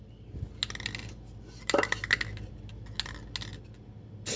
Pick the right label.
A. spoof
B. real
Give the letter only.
B